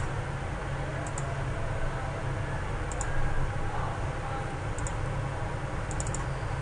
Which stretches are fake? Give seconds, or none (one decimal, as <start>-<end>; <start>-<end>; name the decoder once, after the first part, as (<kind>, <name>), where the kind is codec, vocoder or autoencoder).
none